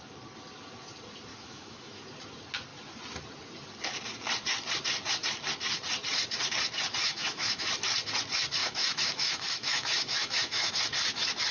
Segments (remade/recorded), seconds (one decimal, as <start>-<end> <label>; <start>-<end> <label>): 0.0-1.3 recorded; 1.3-2.0 remade; 2.0-7.0 recorded; 7.0-7.7 remade; 7.7-8.6 recorded; 8.6-10.7 remade; 10.7-11.5 recorded